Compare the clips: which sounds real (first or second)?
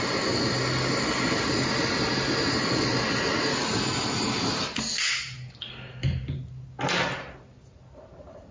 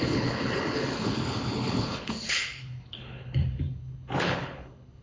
first